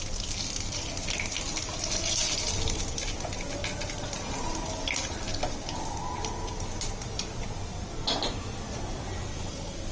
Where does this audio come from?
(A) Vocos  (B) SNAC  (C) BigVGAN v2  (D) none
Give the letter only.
D